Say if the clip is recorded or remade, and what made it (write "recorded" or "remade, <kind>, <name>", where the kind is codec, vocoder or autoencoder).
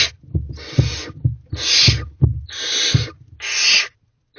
recorded